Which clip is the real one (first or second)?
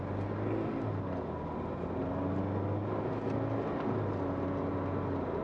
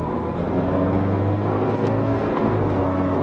first